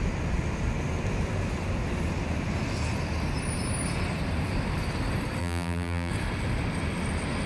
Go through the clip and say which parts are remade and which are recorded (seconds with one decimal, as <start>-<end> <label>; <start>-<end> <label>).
0.0-5.4 recorded; 5.4-6.1 remade; 6.1-7.5 recorded